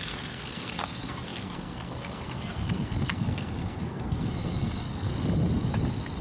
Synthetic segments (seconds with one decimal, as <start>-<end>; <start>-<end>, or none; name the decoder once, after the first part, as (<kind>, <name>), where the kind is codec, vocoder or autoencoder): 0.0-5.1 (codec, SNAC)